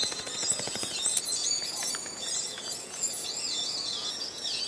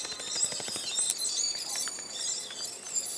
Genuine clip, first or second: second